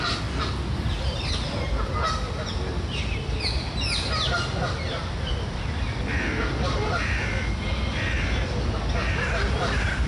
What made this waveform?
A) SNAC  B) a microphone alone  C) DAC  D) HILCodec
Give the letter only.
B